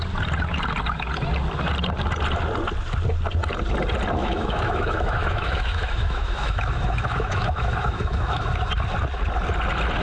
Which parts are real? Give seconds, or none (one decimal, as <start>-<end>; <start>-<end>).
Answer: 0.0-4.2; 8.5-10.0